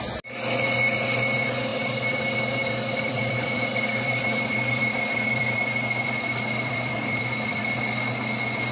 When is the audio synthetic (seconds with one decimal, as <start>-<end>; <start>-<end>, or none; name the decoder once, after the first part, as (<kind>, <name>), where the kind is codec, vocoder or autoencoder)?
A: 1.7-2.2 (vocoder, BigVGAN v2); 2.6-7.8

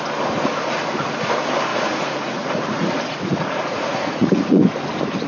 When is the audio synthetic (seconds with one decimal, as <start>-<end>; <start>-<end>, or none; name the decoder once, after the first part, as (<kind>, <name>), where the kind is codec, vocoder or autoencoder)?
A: 1.7-4.6 (vocoder, Vocos)

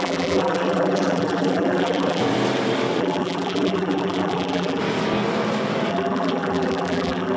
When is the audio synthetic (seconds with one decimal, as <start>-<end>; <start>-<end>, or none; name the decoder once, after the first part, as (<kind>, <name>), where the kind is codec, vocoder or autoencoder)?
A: 0.0-2.2 (vocoder, BigVGAN v2); 3.0-4.8; 5.9-7.4

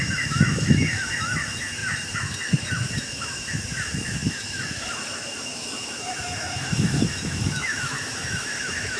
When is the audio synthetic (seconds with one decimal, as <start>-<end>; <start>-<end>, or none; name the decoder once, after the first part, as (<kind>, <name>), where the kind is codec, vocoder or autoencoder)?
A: 0.0-9.0 (autoencoder, DAC-VAE)

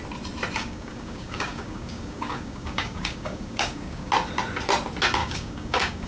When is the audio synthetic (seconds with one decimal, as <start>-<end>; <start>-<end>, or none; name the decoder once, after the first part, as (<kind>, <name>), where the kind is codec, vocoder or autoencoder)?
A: 0.6-4.1 (codec, DAC); 5.2-6.1